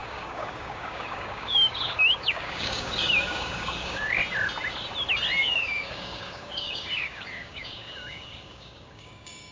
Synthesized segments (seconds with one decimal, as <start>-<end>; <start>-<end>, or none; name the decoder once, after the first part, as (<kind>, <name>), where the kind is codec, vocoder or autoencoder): 0.0-4.2 (codec, DAC); 5.4-9.5